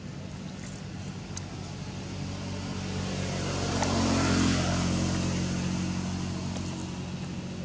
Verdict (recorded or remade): recorded